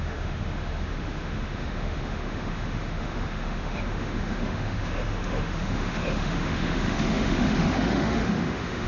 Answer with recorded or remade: remade